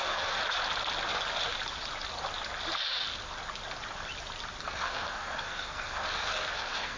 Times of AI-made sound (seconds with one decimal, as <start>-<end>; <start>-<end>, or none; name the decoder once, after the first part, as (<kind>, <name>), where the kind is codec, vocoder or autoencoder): 0.0-0.4 (codec, SNAC); 4.6-7.0